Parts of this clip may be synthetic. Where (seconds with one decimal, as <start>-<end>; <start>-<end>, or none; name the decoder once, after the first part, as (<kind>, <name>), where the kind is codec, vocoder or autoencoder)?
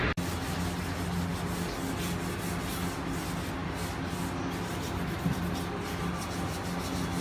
none